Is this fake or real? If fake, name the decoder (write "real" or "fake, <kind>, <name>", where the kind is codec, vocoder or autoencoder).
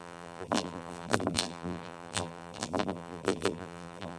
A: fake, vocoder, BigVGAN v2